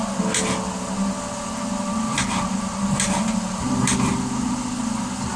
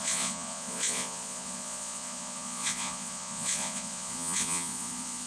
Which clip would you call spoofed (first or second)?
second